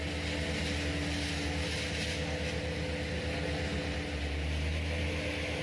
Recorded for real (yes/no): yes